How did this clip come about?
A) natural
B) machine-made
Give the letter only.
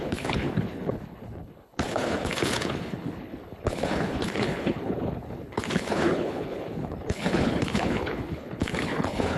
B